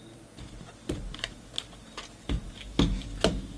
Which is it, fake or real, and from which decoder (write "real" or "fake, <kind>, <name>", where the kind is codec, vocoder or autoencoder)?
real